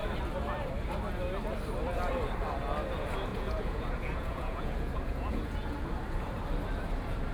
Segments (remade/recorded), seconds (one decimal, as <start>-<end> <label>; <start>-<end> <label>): 0.0-3.3 recorded; 3.3-5.8 remade; 5.8-7.3 recorded